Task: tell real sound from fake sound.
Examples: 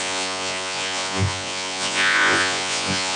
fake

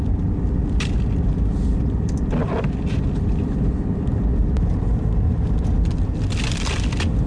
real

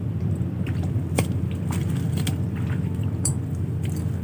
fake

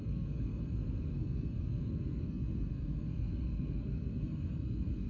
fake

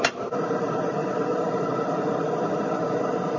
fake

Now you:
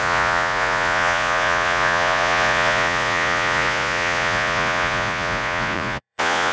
fake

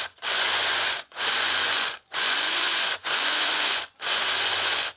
fake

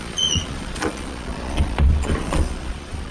fake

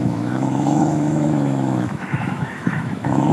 fake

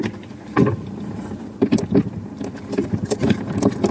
fake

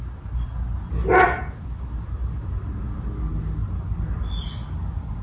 real